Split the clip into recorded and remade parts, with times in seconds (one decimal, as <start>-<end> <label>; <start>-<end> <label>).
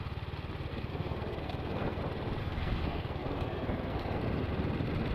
0.0-0.7 recorded; 0.7-2.0 remade; 2.0-2.4 recorded; 2.4-4.2 remade; 4.2-5.1 recorded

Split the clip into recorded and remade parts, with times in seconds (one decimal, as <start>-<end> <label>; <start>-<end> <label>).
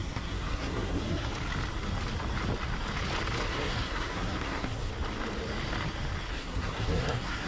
0.0-1.3 remade; 1.3-3.4 recorded; 3.4-4.9 remade; 4.9-6.3 recorded; 6.3-7.5 remade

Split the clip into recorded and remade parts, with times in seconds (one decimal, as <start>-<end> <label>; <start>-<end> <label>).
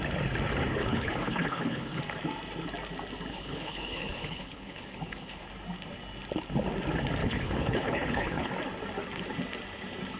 0.0-0.7 recorded; 0.7-2.0 remade; 2.0-3.3 recorded; 3.3-5.5 remade; 5.5-7.2 recorded; 7.2-8.5 remade; 8.5-10.2 recorded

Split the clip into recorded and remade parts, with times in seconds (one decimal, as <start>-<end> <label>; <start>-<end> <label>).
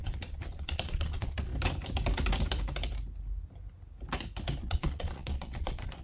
0.0-1.5 remade; 1.5-4.6 recorded; 4.6-6.0 remade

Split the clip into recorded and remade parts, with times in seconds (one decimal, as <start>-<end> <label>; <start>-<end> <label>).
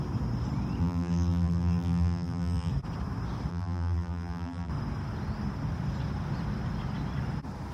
0.0-0.8 recorded; 0.8-2.7 remade; 2.7-3.5 recorded; 3.5-4.7 remade; 4.7-7.7 recorded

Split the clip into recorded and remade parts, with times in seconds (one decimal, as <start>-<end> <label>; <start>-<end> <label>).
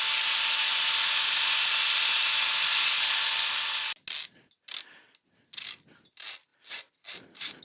0.0-7.6 recorded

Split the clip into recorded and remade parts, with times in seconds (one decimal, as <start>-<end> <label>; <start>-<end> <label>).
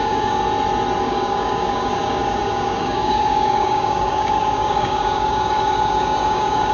0.0-0.4 remade; 0.4-1.0 recorded; 1.0-6.7 remade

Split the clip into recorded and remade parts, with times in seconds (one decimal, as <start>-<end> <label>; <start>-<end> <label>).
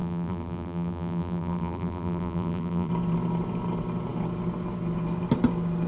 0.0-2.9 remade; 2.9-5.9 recorded